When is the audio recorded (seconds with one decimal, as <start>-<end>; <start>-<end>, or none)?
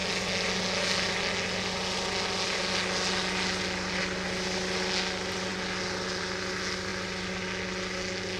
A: 0.0-8.4